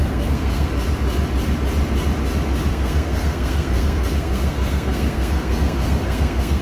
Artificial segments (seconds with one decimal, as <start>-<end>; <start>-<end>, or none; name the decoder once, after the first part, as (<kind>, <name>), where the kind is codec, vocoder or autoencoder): 0.0-0.7 (codec, SNAC); 2.7-6.6